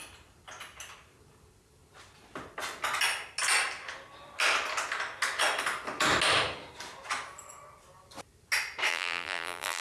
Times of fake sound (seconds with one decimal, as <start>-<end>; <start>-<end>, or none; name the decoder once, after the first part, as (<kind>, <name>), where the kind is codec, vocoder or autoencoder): 8.9-9.8 (vocoder, BigVGAN v2)